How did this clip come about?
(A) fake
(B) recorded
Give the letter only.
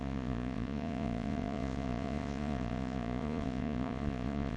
A